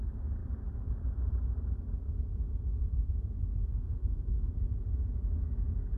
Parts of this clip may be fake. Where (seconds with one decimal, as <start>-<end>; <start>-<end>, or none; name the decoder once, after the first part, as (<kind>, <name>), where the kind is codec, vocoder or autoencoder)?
3.7-4.5 (codec, SNAC)